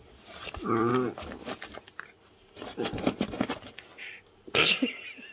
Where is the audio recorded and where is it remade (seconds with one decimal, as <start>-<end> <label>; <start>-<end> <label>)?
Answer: 0.0-0.9 remade; 0.9-2.3 recorded; 2.3-3.9 remade; 3.9-4.7 recorded; 4.7-5.3 remade